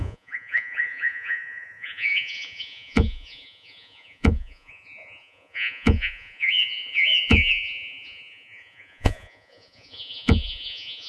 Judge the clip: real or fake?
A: fake